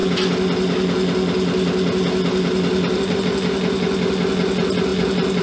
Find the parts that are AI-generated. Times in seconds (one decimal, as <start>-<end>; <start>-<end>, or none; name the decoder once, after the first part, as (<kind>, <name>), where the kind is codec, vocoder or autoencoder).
none